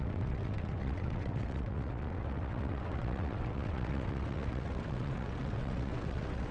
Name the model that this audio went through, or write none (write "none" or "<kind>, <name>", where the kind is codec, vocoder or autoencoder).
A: vocoder, WaveNeXt